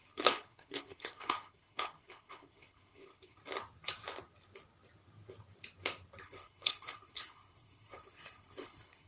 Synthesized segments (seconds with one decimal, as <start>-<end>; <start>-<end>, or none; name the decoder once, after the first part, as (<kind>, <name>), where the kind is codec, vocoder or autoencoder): 0.0-3.4 (codec, HILCodec); 6.2-9.1